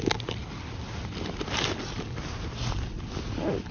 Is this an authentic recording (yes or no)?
yes